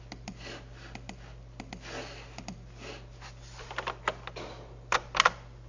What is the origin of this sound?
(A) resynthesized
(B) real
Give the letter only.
B